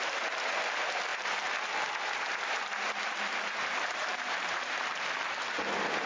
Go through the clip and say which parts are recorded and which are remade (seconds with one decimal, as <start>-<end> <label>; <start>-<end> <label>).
0.0-1.1 recorded; 1.1-1.9 remade; 1.9-3.0 recorded; 3.0-5.0 remade; 5.0-6.1 recorded